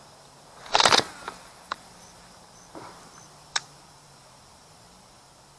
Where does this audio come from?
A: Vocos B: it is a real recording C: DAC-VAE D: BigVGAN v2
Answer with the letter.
D